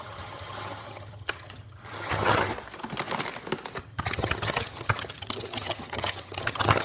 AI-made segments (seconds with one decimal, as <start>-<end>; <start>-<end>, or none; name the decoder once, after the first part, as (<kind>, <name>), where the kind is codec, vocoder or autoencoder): 0.0-2.5 (vocoder, HiFi-GAN); 3.8-6.8